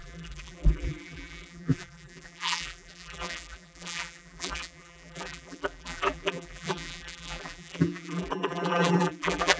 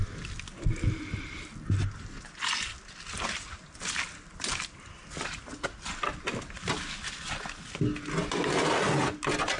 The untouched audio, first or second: second